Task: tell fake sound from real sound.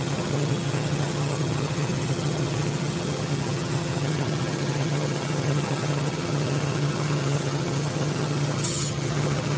fake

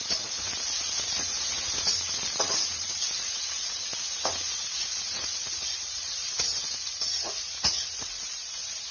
fake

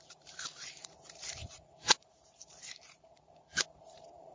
fake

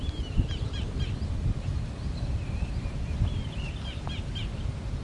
real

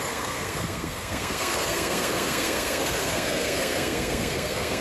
fake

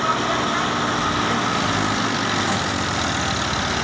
real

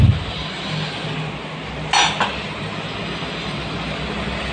real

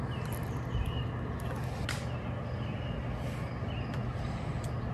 real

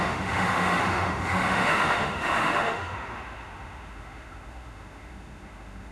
fake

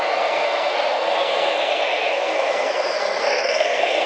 fake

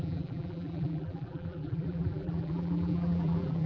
fake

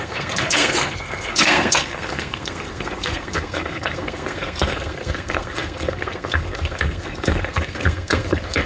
fake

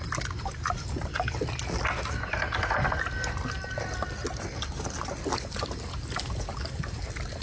real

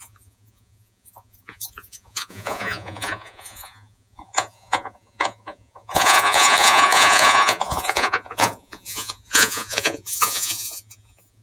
fake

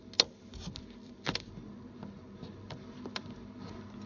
real